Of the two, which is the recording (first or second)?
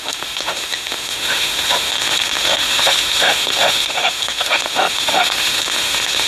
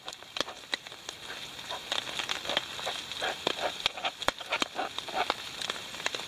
second